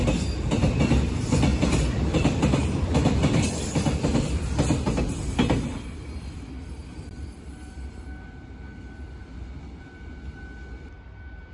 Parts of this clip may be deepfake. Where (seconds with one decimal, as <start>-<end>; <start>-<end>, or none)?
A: 1.5-5.0; 6.8-7.9